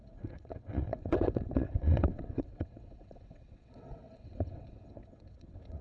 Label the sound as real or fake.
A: fake